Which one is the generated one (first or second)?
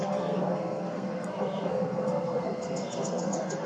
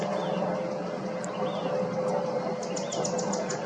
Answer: first